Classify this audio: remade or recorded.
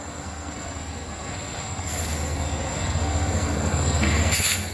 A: remade